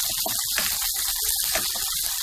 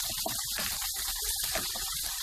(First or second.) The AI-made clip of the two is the second